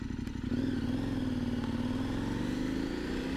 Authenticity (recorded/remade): recorded